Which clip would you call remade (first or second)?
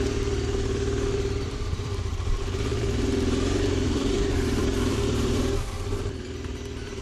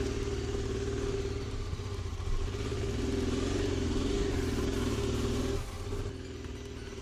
first